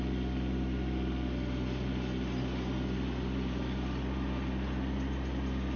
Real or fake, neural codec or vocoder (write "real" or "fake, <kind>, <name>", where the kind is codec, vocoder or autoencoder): real